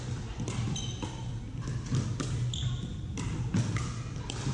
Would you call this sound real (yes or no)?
yes